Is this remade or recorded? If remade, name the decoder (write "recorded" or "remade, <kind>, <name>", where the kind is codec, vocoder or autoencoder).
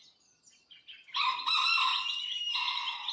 recorded